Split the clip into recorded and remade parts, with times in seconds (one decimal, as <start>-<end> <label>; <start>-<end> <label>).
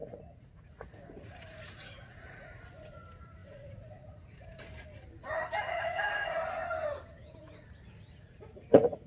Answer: 0.0-4.7 remade; 4.7-5.6 recorded; 5.6-6.6 remade; 6.6-7.2 recorded; 7.2-9.1 remade